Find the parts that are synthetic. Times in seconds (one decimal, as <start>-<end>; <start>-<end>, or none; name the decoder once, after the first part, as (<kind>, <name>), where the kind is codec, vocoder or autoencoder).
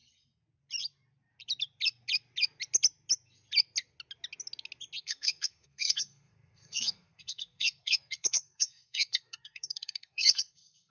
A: 5.0-10.9 (codec, SNAC)